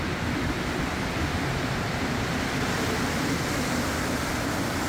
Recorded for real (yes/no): no